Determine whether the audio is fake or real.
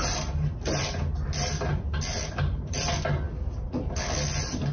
real